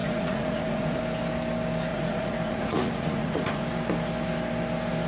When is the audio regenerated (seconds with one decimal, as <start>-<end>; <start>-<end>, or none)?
0.0-1.0; 1.9-3.6